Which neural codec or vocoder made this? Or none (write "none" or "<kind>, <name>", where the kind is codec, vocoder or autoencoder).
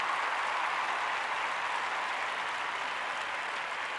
none